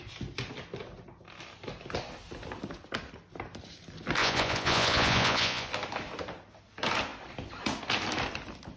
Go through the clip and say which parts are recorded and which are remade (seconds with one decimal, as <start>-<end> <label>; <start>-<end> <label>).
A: 0.0-4.2 recorded; 4.2-5.7 remade; 5.7-8.8 recorded